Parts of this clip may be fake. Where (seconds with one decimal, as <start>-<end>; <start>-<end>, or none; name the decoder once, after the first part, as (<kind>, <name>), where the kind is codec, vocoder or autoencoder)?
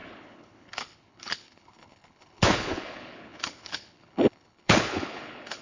0.0-5.6 (codec, HILCodec)